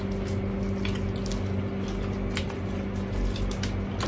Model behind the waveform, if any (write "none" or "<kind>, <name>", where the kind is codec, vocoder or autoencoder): none